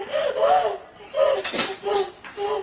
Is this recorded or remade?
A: recorded